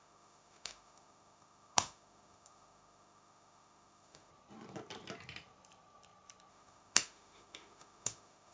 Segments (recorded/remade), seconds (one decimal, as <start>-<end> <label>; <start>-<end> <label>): 0.0-4.3 remade; 4.3-6.5 recorded; 6.5-8.5 remade